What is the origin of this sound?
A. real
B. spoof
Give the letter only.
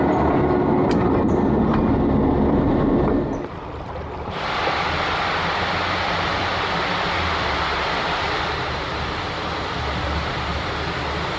A